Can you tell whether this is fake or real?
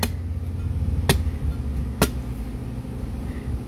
real